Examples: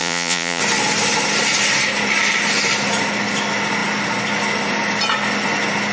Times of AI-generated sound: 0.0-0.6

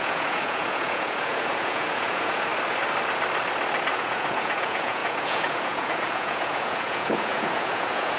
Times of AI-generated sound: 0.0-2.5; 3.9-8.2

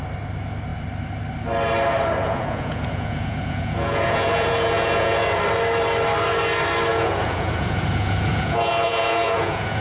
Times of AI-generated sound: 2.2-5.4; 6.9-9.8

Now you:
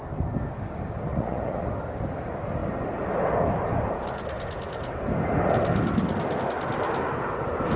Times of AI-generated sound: 1.1-1.7